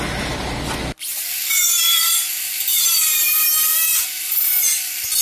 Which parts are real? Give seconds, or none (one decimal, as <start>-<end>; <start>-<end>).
0.0-5.2